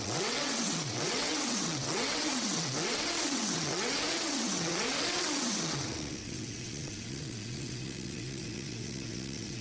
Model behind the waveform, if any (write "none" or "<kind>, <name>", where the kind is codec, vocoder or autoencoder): vocoder, WaveNeXt